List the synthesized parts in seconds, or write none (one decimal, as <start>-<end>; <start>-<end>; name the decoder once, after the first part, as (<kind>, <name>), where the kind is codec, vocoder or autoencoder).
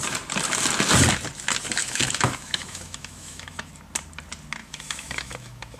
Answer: 1.8-3.7 (autoencoder, DAC-VAE); 4.6-5.8